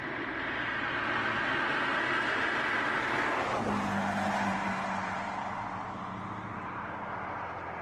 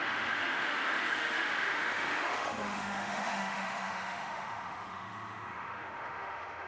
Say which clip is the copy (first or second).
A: second